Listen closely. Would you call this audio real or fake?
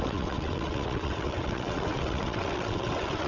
fake